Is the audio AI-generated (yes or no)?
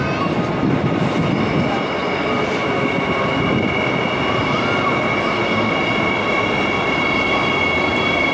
no